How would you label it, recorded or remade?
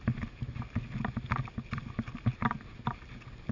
recorded